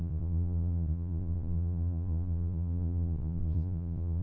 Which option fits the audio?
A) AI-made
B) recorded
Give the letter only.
A